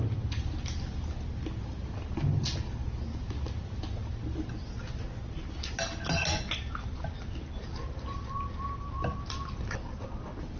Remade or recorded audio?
recorded